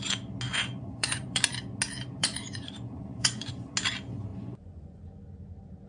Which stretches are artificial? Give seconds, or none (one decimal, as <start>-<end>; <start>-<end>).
0.5-1.4; 2.2-3.7; 4.3-5.0